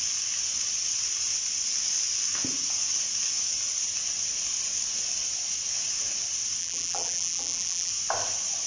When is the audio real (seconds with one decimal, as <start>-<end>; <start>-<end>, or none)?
0.0-6.6; 7.9-8.7